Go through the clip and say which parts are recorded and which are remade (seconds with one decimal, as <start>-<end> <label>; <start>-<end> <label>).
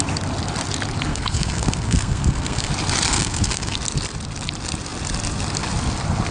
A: 0.0-1.1 recorded; 1.1-2.7 remade; 2.7-3.1 recorded; 3.1-3.8 remade; 3.8-6.3 recorded